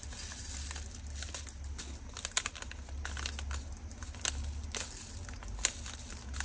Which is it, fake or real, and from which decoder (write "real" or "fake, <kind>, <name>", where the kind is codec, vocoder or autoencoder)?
real